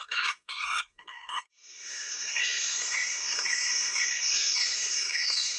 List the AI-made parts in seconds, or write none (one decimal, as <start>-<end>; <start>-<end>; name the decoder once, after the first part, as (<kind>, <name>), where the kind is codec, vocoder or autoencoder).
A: 0.0-5.6 (codec, SNAC)